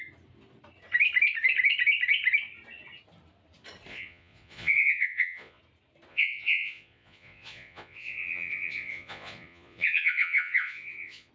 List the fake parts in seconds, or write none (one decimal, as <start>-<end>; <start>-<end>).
3.9-5.6; 6.1-11.3